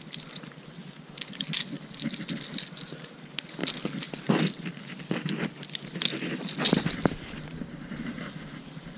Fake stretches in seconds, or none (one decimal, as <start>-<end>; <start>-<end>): none